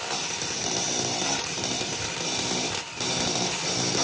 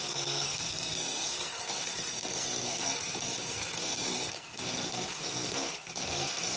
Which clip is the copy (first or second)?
second